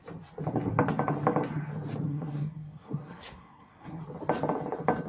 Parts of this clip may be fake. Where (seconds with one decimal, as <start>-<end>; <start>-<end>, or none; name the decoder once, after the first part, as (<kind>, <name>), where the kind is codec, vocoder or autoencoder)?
2.1-4.0 (codec, SNAC)